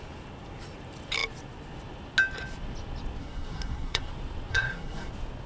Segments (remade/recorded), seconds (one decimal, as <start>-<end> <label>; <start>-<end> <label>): 0.0-3.2 recorded; 3.2-4.1 remade; 4.1-4.5 recorded; 4.5-5.1 remade; 5.1-5.5 recorded